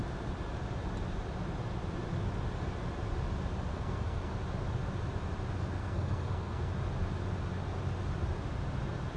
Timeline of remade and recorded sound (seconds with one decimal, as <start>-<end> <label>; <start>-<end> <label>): 0.0-3.7 recorded; 3.7-4.3 remade; 4.3-5.8 recorded; 5.8-6.7 remade; 6.7-9.2 recorded